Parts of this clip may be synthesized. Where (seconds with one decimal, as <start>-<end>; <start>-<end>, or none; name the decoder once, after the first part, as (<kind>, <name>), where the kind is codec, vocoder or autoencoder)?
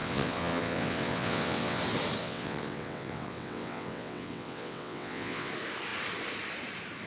0.0-1.8 (vocoder, WaveNeXt); 2.2-5.5